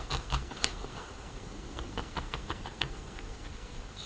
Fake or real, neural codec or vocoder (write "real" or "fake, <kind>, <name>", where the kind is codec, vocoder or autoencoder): fake, codec, SNAC